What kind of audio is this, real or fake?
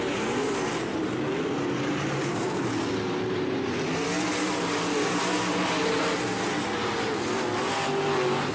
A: real